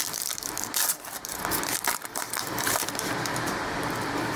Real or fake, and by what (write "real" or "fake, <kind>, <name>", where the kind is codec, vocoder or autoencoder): fake, vocoder, BigVGAN v2